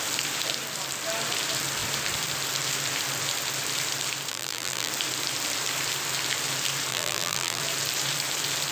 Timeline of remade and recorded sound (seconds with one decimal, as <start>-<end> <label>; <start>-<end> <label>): 0.0-4.3 recorded; 4.3-4.9 remade; 4.9-6.9 recorded; 6.9-7.6 remade; 7.6-8.7 recorded